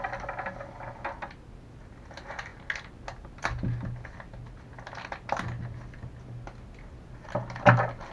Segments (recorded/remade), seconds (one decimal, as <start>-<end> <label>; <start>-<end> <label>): 0.0-8.1 recorded